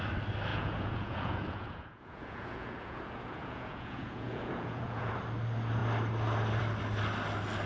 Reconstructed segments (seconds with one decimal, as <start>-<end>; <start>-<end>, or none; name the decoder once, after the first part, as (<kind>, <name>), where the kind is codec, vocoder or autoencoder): 0.5-5.1 (vocoder, Vocos)